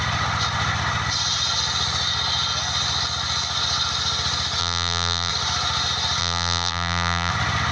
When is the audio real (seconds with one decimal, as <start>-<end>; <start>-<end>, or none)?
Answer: 0.0-4.6; 5.3-6.2; 7.3-7.7

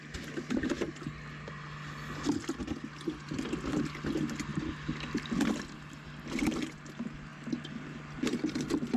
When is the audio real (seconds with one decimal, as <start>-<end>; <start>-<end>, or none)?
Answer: 0.0-9.0

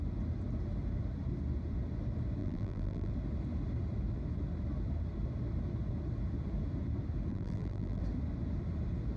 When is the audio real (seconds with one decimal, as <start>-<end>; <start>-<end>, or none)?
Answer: 0.0-2.4; 3.1-7.3; 8.0-9.2

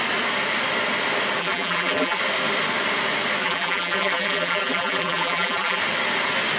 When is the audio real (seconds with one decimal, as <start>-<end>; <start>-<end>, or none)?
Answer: 0.0-1.4; 2.2-3.4; 5.8-6.6

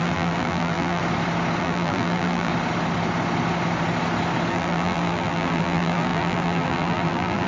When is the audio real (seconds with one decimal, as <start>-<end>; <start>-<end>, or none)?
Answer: 1.0-1.6; 2.5-4.5

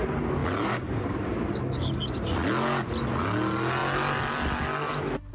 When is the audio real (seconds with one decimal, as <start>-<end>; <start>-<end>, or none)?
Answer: 0.0-0.4; 1.9-5.3

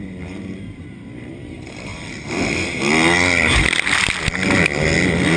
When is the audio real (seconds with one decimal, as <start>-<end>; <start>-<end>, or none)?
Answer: 1.9-5.4